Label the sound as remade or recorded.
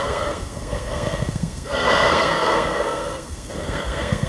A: remade